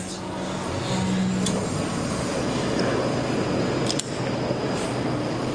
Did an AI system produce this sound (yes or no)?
no